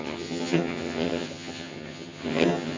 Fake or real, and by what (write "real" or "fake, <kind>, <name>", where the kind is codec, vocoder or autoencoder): fake, vocoder, HiFi-GAN